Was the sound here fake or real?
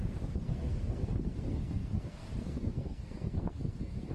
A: fake